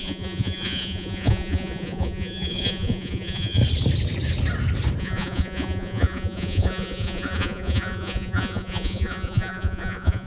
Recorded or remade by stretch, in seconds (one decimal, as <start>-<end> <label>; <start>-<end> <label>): 0.0-3.6 remade; 3.6-5.0 recorded; 5.0-10.3 remade